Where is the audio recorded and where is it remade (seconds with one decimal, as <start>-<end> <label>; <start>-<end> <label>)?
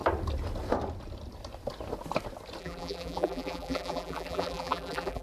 0.0-2.6 recorded; 2.6-5.2 remade